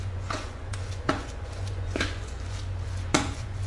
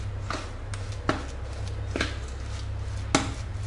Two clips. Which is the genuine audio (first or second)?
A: second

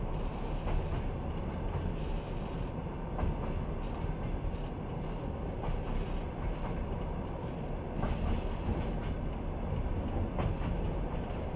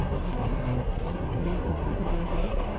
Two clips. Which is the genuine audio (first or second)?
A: first